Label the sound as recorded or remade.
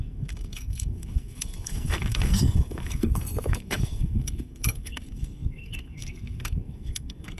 remade